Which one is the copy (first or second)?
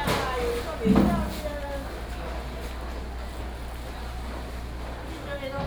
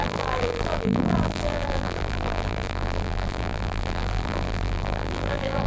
second